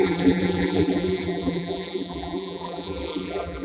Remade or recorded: remade